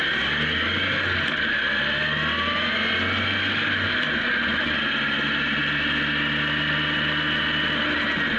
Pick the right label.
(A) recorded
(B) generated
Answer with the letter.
A